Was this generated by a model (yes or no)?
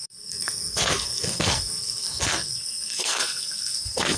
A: yes